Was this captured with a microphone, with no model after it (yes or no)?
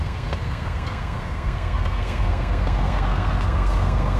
no